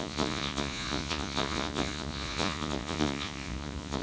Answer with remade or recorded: remade